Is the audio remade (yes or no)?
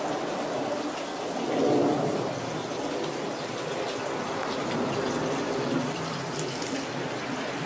no